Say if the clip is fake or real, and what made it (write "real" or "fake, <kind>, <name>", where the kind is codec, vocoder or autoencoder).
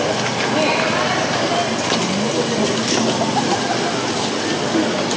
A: real